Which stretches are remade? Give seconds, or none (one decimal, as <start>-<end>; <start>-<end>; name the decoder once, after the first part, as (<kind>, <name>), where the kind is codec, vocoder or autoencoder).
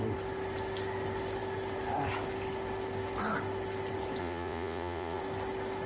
4.2-5.2 (vocoder, Vocos)